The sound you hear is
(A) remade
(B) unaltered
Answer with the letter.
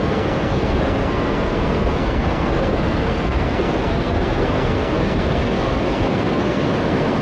A